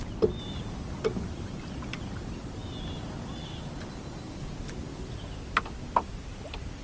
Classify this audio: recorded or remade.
recorded